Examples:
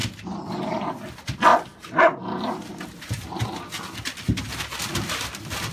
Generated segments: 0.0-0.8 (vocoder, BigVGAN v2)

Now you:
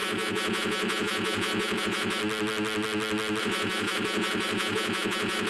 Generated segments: 0.0-2.2 (vocoder, Vocos); 3.4-5.5

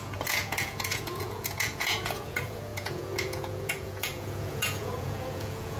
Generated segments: 0.0-5.8 (vocoder, Vocos)

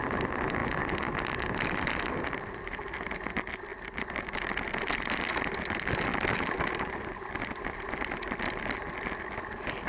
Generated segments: none

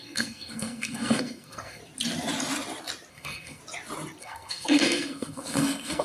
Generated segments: 0.0-1.8 (codec, SNAC); 3.1-3.6; 4.2-6.0